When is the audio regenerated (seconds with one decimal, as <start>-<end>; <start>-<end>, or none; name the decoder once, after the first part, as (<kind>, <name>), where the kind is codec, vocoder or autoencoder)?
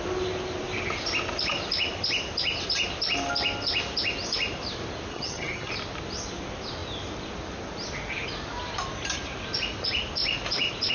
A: 5.1-5.7 (vocoder, HiFi-GAN)